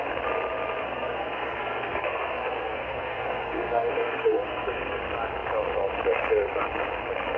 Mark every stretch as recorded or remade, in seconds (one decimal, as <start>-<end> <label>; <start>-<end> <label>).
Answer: 0.0-0.8 recorded; 0.8-5.0 remade; 5.0-7.4 recorded